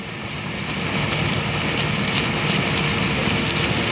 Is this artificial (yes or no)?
no